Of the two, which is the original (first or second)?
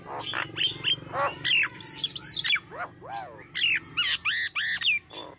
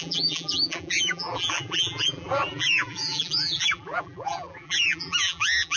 first